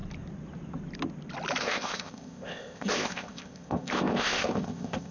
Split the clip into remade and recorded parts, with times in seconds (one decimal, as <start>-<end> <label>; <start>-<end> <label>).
0.0-1.6 recorded; 1.6-5.1 remade